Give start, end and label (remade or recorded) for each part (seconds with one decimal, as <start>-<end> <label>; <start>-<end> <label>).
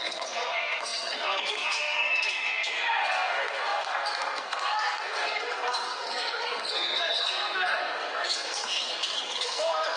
0.0-10.0 remade